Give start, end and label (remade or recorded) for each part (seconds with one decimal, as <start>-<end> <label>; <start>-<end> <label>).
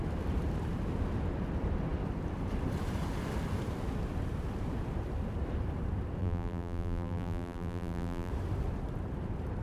0.0-6.2 recorded; 6.2-8.3 remade; 8.3-9.6 recorded